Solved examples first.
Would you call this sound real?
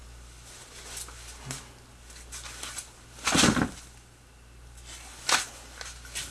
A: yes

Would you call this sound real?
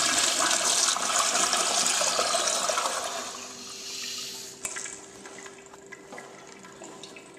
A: yes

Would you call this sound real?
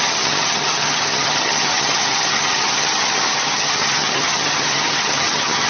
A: no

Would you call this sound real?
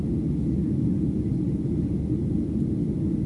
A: yes